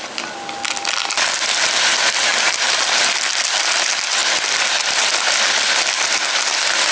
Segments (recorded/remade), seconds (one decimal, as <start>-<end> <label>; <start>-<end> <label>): 0.0-2.3 recorded; 2.3-3.0 remade; 3.0-6.9 recorded